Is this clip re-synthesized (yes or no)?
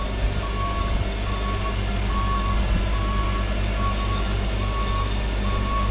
no